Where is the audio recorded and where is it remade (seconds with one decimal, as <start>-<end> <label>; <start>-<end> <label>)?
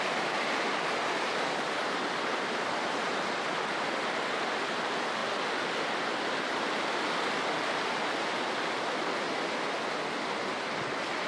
0.0-11.3 recorded